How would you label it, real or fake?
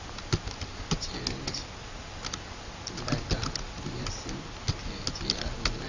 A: real